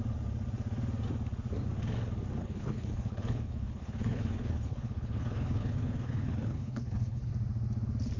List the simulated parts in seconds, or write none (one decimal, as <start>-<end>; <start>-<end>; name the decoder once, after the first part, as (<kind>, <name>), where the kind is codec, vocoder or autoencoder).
2.4-7.3 (codec, HILCodec)